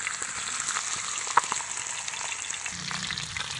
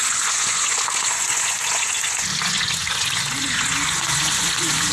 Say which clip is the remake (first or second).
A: second